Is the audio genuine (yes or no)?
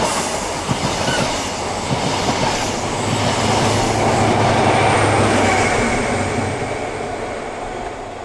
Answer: yes